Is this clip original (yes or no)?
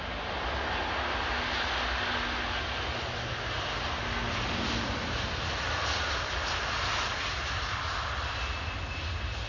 yes